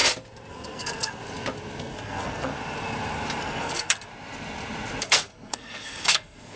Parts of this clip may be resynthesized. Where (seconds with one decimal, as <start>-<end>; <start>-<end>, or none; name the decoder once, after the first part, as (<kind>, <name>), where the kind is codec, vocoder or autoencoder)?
0.5-1.2 (codec, SNAC); 1.8-2.5; 3.4-4.1; 5.0-6.6